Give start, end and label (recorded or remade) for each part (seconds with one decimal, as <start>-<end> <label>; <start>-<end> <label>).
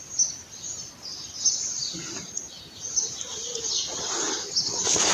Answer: 0.0-5.1 recorded